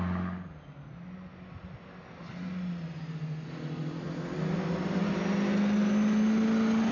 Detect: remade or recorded recorded